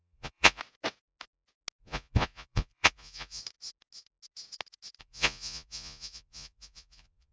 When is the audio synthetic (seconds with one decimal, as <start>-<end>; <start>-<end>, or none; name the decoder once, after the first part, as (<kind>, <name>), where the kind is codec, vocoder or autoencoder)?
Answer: 0.0-0.6 (vocoder, Vocos); 1.8-3.4; 5.0-7.3

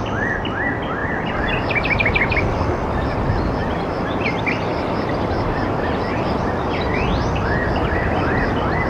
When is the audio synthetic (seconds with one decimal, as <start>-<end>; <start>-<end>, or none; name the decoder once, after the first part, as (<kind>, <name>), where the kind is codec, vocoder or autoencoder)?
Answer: 1.0-1.5 (vocoder, BigVGAN v2); 3.6-4.1; 4.7-5.6

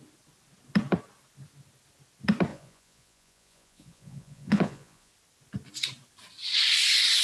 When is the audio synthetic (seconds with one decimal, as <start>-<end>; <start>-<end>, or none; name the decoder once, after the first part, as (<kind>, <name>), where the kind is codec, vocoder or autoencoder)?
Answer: 2.5-5.1 (vocoder, Vocos)

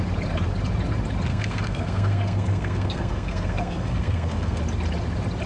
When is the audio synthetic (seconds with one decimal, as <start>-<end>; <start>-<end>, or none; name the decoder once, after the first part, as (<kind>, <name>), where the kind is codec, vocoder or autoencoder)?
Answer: 1.3-4.6 (codec, SNAC)

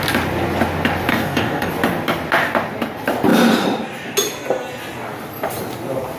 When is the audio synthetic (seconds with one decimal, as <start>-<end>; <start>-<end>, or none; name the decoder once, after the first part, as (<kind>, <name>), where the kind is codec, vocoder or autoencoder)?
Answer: 1.1-1.7 (codec, DAC)

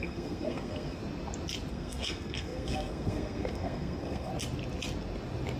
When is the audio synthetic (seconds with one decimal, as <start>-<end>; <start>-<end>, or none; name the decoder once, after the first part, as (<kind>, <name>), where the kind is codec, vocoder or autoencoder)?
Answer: 0.0-1.0 (codec, SNAC); 1.7-4.3